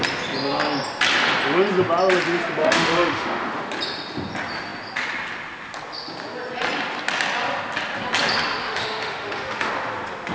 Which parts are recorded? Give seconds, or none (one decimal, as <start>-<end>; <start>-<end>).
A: 0.0-2.6; 3.7-8.6; 9.7-10.3